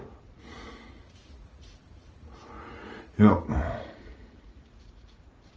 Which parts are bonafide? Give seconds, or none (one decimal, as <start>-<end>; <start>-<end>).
none

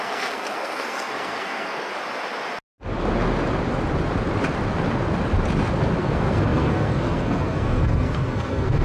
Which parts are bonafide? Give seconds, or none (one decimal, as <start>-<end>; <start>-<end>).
1.9-6.0